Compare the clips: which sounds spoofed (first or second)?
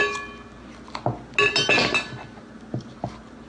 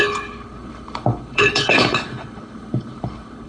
second